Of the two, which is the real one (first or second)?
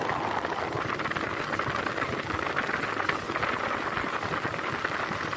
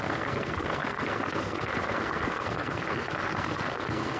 first